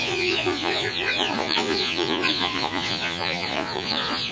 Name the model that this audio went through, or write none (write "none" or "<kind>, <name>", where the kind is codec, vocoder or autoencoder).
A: vocoder, Vocos